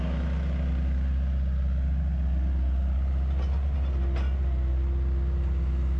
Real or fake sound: real